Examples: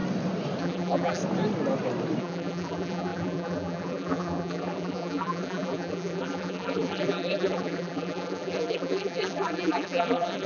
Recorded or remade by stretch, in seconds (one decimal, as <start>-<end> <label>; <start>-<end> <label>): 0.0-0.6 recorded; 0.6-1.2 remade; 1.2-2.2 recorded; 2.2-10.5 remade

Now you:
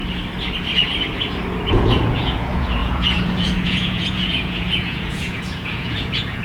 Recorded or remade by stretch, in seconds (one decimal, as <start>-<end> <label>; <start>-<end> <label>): 0.0-1.7 recorded; 1.7-6.4 remade

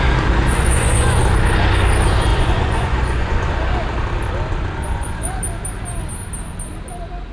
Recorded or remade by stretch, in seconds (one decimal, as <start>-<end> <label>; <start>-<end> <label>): 0.0-0.5 recorded; 0.5-1.2 remade; 1.2-2.3 recorded; 2.3-3.5 remade; 3.5-4.8 recorded; 4.8-5.3 remade; 5.3-7.3 recorded